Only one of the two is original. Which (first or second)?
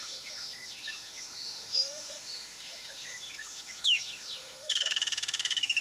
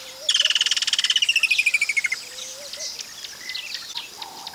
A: second